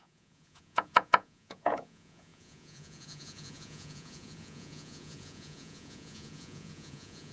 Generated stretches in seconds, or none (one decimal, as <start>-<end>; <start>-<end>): 0.0-7.3